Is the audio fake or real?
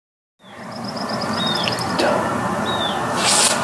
real